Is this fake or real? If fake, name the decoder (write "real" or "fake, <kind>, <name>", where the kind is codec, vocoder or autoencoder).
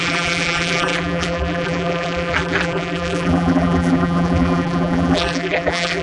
fake, vocoder, BigVGAN v2